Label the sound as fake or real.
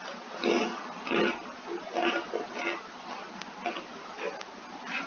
real